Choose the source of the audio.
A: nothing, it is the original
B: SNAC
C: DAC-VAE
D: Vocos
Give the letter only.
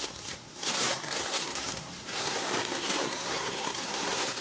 B